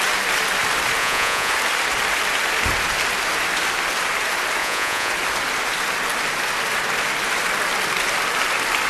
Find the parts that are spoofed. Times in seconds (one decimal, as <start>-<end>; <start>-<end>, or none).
1.0-1.5; 4.6-5.1